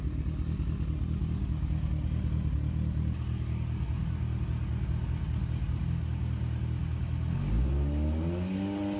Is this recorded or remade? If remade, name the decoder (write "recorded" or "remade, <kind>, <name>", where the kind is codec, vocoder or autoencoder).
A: recorded